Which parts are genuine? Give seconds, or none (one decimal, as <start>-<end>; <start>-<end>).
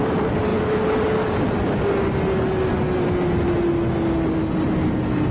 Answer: 0.0-5.3